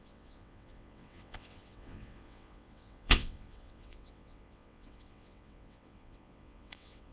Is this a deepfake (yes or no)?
yes